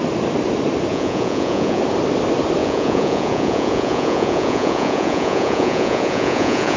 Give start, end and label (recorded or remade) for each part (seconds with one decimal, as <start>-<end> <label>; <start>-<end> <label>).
0.0-0.9 recorded; 0.9-1.8 remade; 1.8-2.6 recorded; 2.6-6.8 remade